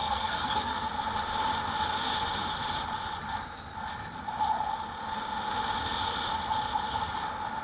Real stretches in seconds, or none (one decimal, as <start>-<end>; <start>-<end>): 0.9-7.6